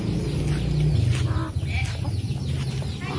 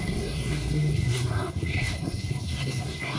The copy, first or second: second